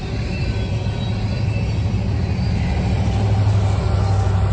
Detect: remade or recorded recorded